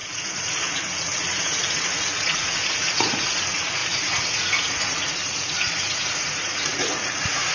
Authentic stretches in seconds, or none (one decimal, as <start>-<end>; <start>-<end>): none